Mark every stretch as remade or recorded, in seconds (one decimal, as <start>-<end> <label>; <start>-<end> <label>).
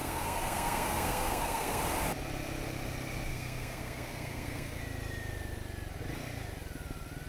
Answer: 0.0-1.8 remade; 1.8-3.3 recorded; 3.3-4.8 remade; 4.8-7.3 recorded